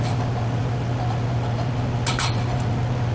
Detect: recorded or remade recorded